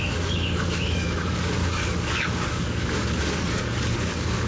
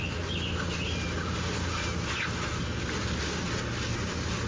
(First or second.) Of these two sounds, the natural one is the second